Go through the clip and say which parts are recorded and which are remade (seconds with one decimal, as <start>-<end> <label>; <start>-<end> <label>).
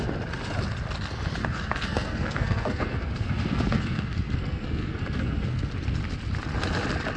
0.0-1.4 recorded; 1.4-5.7 remade; 5.7-7.2 recorded